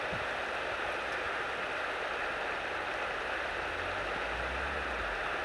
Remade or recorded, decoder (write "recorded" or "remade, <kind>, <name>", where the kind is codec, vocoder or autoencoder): recorded